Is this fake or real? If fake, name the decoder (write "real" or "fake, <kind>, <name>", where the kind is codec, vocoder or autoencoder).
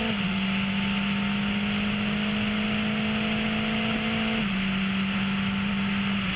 real